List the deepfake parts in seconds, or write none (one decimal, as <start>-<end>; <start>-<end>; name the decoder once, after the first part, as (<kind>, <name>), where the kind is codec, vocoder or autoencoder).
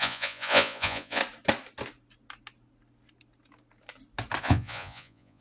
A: 0.0-1.2 (vocoder, Vocos); 4.4-5.4